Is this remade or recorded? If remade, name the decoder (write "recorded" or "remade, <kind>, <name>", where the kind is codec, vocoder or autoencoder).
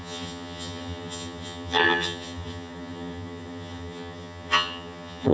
remade, vocoder, HiFi-GAN